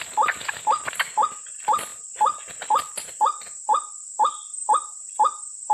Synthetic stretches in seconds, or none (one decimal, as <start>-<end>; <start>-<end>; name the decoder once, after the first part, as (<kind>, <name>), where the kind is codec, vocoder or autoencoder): none